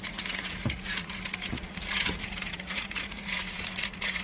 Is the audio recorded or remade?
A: remade